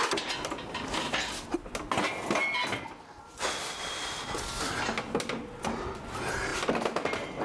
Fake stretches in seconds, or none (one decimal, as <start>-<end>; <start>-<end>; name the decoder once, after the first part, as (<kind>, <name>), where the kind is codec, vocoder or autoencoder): none